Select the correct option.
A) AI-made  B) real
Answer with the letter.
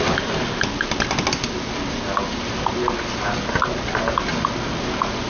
B